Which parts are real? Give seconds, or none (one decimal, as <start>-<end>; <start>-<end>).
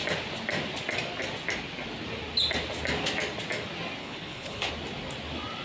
0.0-4.0; 4.7-5.6